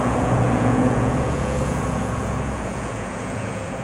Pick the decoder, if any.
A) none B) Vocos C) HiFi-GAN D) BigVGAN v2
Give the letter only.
B